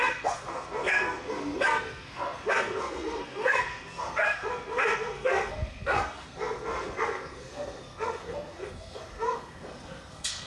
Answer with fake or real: fake